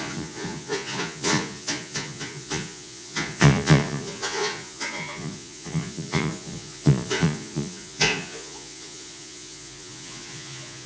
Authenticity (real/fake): fake